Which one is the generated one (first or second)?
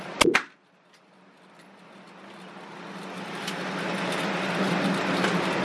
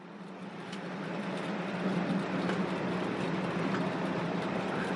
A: second